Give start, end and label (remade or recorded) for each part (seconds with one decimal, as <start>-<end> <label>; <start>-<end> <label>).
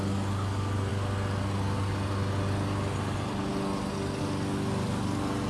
0.0-5.5 recorded